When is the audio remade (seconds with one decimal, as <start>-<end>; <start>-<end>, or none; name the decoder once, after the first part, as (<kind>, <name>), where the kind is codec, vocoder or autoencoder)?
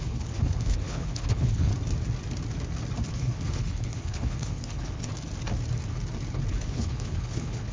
0.0-1.7 (codec, HILCodec); 3.1-5.1; 6.5-7.7